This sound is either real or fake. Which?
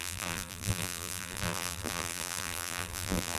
fake